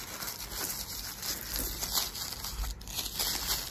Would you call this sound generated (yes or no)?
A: no